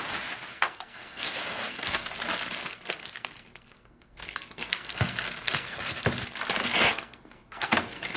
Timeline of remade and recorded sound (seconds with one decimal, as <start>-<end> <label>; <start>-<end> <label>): 0.0-0.5 recorded; 0.5-2.1 remade; 2.1-2.6 recorded; 2.6-6.0 remade; 6.0-6.6 recorded; 6.6-8.2 remade